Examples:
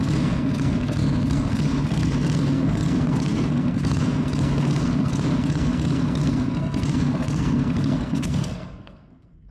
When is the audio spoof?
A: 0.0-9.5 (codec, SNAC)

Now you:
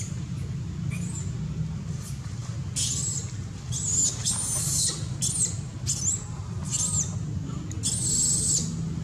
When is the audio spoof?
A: none

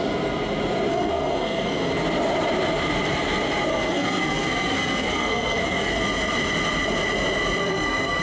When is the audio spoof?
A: 0.9-1.9 (codec, SNAC); 3.7-5.9; 7.6-8.2

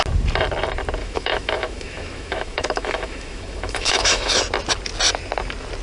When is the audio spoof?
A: 1.0-4.4 (autoencoder, DAC-VAE)

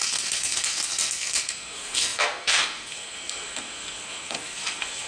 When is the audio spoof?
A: 0.0-5.1 (codec, SNAC)

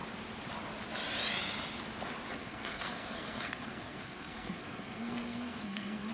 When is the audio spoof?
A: 2.3-6.1 (codec, SNAC)